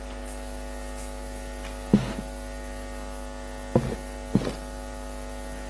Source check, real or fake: real